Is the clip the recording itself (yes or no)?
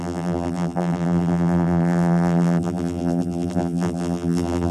no